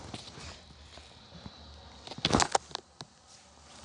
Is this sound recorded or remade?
recorded